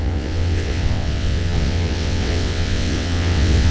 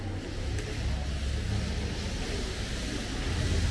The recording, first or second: second